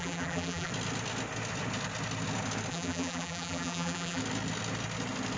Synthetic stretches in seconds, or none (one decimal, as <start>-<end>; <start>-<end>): 0.0-0.7; 2.7-4.2